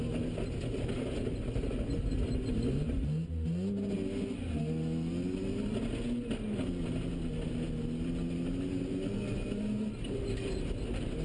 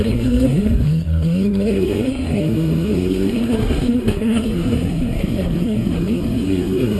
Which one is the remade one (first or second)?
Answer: second